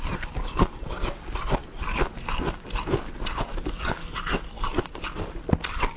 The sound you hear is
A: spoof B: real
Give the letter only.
B